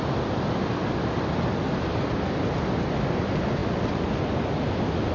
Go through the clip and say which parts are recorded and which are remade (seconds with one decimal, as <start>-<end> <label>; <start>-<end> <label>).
0.0-5.1 recorded